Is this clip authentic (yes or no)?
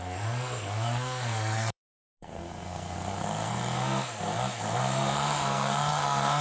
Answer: no